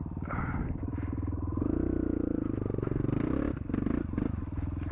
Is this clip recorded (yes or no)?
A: no